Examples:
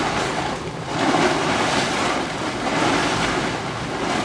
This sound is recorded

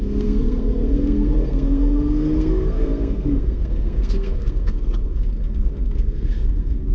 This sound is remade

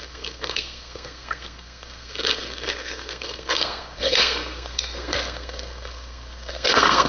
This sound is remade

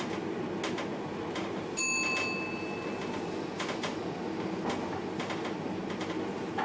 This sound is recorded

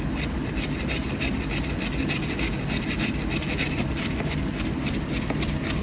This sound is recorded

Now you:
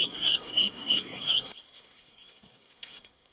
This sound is remade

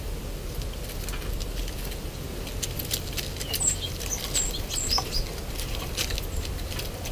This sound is recorded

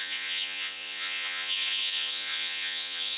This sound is remade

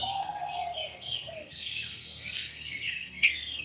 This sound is remade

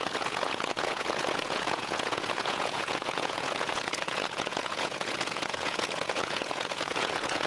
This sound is remade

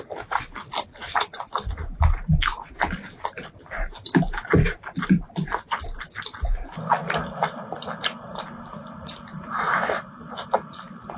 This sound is recorded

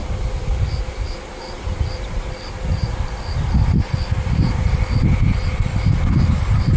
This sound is recorded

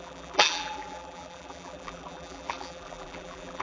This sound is remade